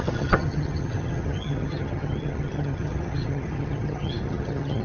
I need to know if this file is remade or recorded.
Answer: remade